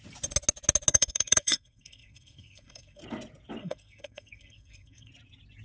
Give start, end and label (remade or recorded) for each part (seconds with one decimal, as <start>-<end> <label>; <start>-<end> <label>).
0.0-0.9 recorded; 0.9-3.0 remade; 3.0-3.6 recorded; 3.6-5.1 remade; 5.1-5.6 recorded